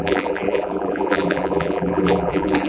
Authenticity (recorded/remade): remade